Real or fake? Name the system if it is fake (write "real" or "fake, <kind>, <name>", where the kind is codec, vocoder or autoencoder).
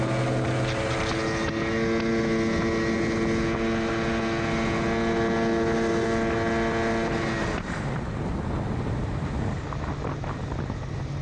real